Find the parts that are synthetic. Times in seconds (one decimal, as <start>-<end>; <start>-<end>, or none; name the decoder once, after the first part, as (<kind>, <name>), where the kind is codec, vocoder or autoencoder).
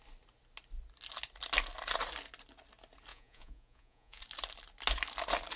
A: 3.1-4.2 (vocoder, Vocos)